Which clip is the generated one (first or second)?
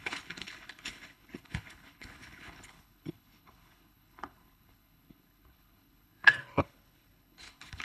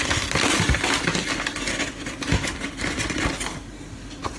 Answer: first